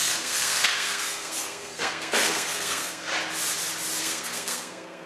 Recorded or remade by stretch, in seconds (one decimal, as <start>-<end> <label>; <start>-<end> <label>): 0.0-3.1 remade; 3.1-4.0 recorded; 4.0-5.1 remade